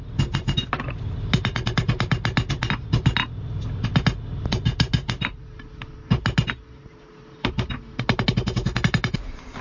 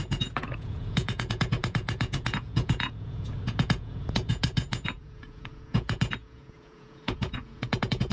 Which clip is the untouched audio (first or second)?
first